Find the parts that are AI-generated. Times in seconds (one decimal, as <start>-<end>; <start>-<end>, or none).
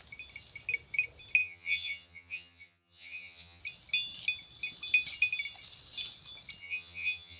1.4-3.6; 6.6-7.4